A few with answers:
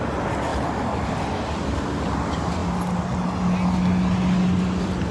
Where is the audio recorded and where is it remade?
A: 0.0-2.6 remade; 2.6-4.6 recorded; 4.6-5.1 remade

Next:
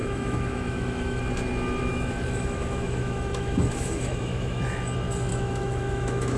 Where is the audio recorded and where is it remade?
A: 0.0-1.2 remade; 1.2-1.9 recorded; 1.9-4.6 remade; 4.6-5.3 recorded; 5.3-6.4 remade